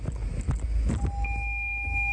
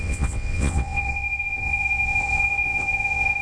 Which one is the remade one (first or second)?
second